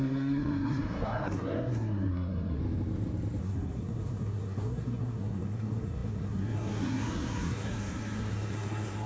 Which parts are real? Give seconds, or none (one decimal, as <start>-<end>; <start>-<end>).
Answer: 2.6-3.4